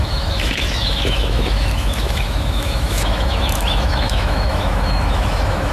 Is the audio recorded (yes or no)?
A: no